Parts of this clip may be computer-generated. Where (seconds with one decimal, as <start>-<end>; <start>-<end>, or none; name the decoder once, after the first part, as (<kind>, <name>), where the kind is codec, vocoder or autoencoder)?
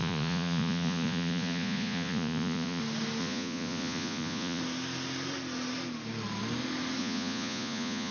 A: 0.0-2.8 (vocoder, Vocos); 3.2-4.6; 7.0-8.1